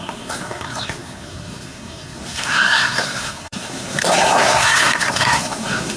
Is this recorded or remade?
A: remade